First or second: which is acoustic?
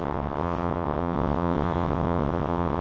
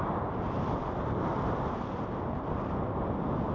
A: second